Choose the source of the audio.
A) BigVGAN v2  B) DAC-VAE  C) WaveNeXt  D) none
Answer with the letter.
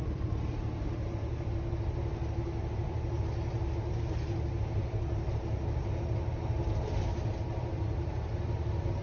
A